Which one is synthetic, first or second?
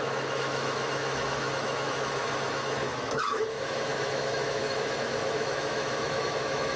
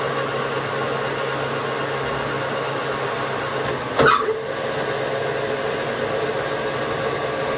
first